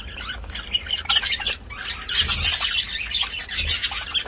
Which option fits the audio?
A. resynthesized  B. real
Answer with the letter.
B